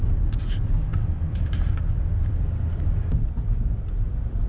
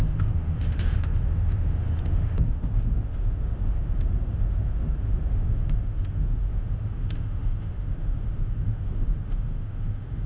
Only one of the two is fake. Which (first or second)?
second